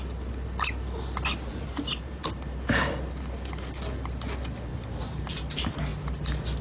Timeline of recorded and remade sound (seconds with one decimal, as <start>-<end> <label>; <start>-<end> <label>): 0.0-1.5 recorded; 1.5-2.2 remade; 2.2-4.7 recorded; 4.7-5.4 remade; 5.4-6.6 recorded